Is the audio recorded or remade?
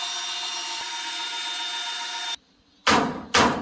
recorded